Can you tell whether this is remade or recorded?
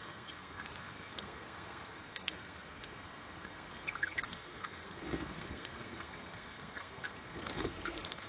remade